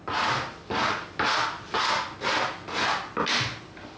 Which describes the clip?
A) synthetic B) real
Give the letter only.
B